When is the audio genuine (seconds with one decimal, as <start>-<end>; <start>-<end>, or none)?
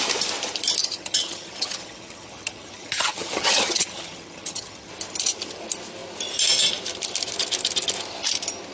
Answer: 0.0-0.8; 4.9-8.7